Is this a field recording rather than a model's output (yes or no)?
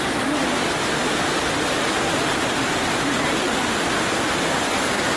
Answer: yes